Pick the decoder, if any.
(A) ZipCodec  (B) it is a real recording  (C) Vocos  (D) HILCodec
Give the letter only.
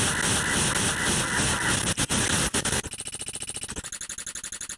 B